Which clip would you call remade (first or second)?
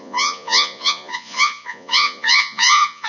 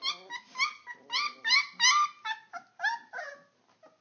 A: first